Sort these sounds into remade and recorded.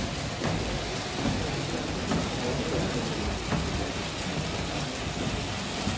recorded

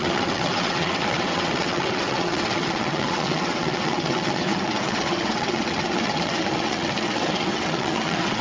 remade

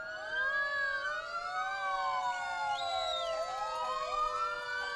recorded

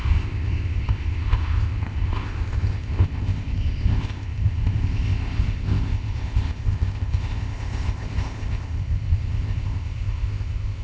remade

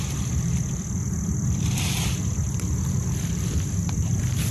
remade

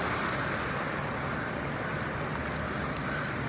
recorded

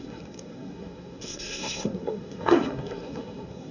remade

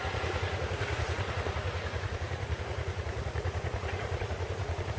remade